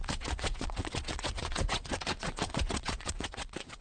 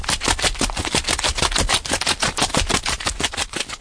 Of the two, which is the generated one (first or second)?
first